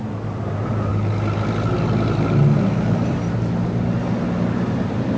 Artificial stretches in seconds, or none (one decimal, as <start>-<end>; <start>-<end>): none

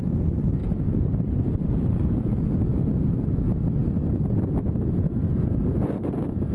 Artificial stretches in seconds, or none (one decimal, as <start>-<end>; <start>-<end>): 0.6-2.2

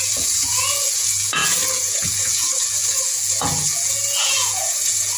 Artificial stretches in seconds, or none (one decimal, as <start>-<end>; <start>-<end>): 0.0-5.2

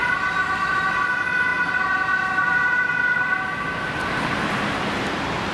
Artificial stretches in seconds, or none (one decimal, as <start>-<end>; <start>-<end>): none

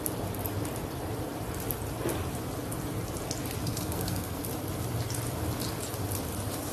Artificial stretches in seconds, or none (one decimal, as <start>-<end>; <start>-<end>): 3.6-4.4

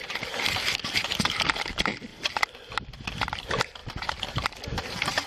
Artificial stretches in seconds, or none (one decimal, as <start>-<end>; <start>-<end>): none

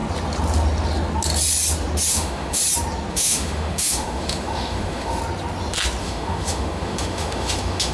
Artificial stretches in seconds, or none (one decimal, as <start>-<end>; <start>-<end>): 2.1-2.6; 3.1-5.2; 6.0-7.9